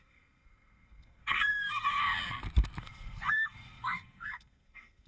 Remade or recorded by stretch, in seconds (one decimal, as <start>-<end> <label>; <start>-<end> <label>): 0.0-2.0 remade; 2.0-2.8 recorded; 2.8-5.1 remade